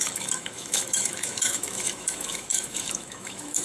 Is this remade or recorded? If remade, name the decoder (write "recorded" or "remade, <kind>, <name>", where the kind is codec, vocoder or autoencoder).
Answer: remade, autoencoder, DAC-VAE